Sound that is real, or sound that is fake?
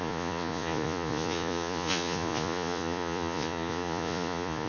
fake